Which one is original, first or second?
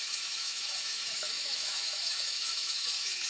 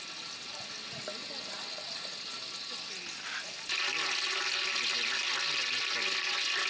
second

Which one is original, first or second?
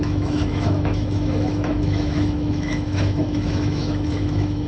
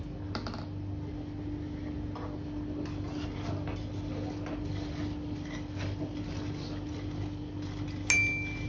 second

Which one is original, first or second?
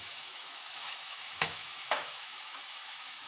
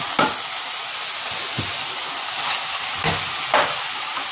second